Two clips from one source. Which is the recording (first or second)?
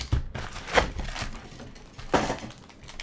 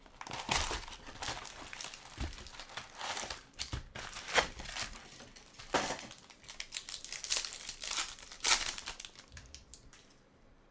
first